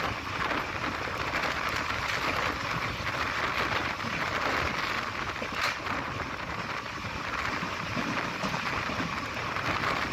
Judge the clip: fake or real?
real